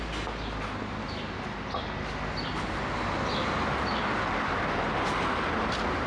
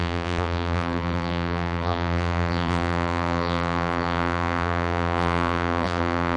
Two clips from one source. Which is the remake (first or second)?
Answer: second